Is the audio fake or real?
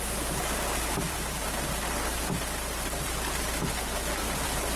fake